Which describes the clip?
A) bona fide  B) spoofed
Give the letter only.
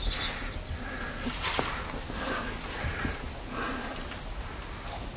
A